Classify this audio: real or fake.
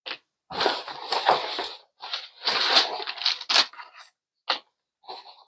real